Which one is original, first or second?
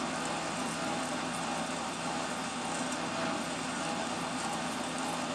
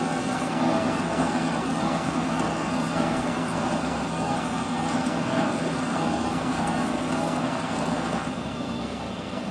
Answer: first